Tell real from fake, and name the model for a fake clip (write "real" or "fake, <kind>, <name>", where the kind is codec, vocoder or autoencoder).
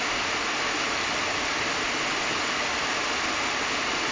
real